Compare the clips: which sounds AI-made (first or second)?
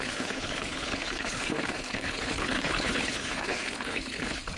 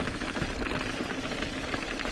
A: first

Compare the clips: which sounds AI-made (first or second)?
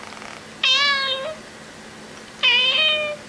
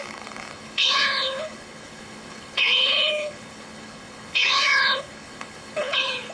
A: second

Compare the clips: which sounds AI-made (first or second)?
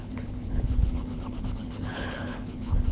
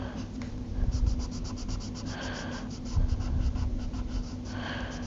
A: first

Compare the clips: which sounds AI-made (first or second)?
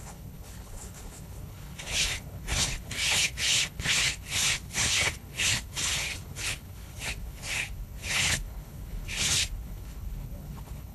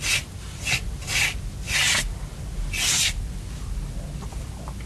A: first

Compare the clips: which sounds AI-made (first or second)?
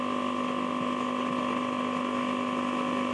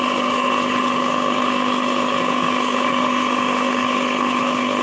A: second